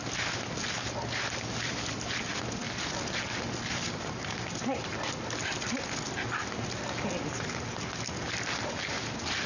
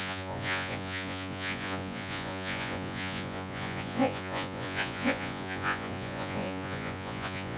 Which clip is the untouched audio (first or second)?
first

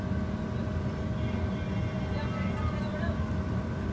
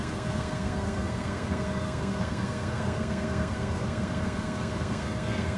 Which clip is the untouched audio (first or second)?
first